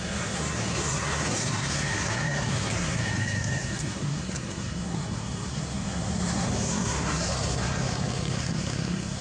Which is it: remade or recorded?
remade